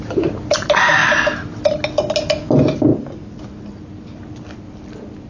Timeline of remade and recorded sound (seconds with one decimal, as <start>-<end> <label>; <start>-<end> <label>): 0.0-1.0 recorded; 1.0-1.6 remade; 1.6-5.3 recorded